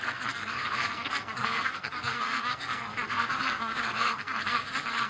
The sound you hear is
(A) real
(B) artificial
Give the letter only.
B